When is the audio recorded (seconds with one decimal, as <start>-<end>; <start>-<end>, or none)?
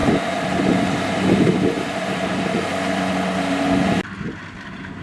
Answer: 3.0-5.0